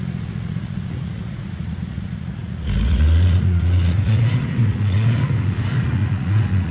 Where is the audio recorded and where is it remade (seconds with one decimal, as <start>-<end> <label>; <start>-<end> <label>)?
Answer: 0.0-6.7 remade